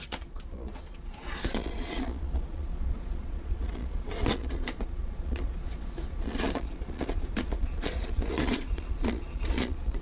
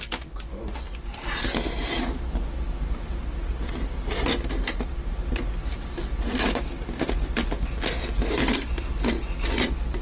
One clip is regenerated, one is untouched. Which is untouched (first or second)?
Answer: second